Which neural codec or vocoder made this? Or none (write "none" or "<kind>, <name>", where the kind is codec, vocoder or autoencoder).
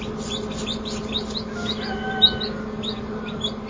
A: none